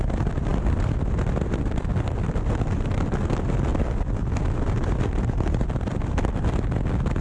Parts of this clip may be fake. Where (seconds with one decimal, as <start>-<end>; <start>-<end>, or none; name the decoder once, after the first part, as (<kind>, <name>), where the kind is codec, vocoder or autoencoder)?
0.5-2.9 (vocoder, BigVGAN v2); 3.7-6.8